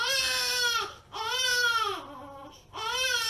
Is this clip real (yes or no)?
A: yes